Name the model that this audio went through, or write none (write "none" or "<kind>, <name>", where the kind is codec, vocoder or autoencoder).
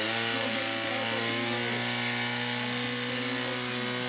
none